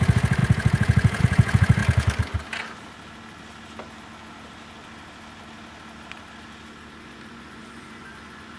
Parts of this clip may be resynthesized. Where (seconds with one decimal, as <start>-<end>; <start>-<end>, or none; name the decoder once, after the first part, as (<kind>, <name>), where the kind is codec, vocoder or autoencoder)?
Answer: 0.0-1.8 (vocoder, Vocos); 7.0-8.6